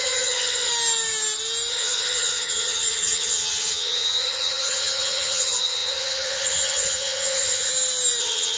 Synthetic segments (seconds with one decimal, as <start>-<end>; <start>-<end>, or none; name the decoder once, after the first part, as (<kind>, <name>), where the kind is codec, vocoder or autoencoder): 0.0-0.7 (vocoder, HiFi-GAN); 1.7-7.7; 8.2-8.6